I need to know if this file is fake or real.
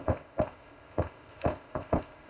fake